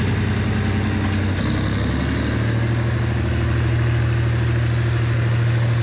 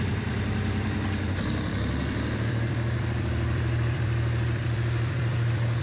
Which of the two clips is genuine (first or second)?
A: first